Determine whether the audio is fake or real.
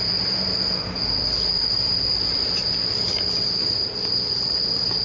real